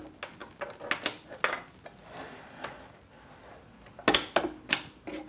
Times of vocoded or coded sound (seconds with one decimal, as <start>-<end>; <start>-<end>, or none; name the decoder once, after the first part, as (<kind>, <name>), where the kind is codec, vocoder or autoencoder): none